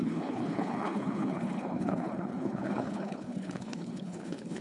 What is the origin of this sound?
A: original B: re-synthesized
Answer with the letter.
B